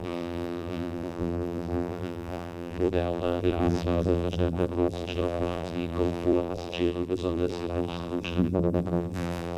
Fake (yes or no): yes